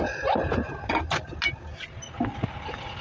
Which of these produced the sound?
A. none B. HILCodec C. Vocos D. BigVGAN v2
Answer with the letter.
A